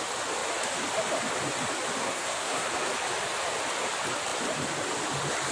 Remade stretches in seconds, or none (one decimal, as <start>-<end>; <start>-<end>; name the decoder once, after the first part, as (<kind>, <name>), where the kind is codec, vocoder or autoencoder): 2.0-2.7 (codec, SNAC)